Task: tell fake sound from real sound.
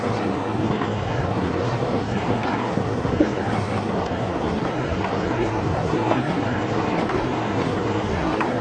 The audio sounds fake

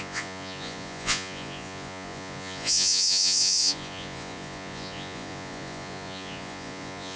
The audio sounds fake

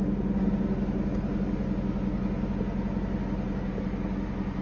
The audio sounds real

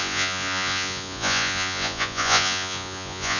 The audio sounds fake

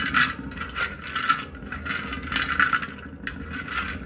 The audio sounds real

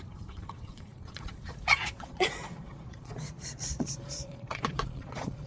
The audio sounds fake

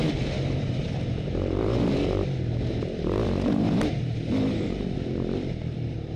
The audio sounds fake